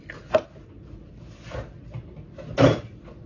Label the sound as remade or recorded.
recorded